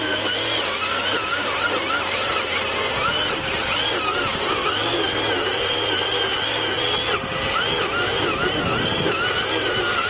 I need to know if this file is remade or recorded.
recorded